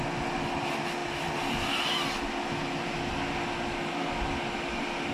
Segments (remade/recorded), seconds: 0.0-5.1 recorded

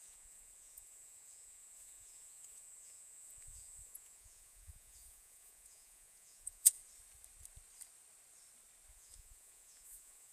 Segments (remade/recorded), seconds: 0.0-6.8 remade; 6.8-8.9 recorded; 8.9-10.3 remade

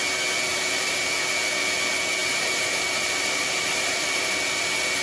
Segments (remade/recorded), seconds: 0.0-0.5 recorded; 0.5-1.0 remade; 1.0-2.2 recorded; 2.2-4.3 remade; 4.3-5.0 recorded

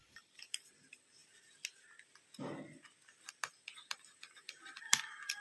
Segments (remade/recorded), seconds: 0.0-1.2 remade; 1.2-3.5 recorded; 3.5-5.4 remade

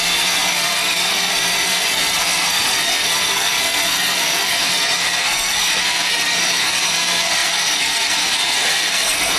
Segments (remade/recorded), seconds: 0.0-9.4 remade

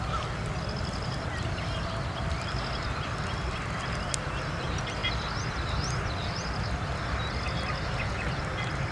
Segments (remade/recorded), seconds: 0.0-8.9 recorded

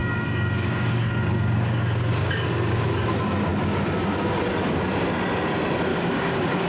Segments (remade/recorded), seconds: 0.0-3.1 remade; 3.1-5.9 recorded; 5.9-6.7 remade

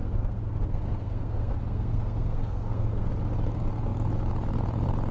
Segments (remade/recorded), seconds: 0.0-3.1 remade; 3.1-5.1 recorded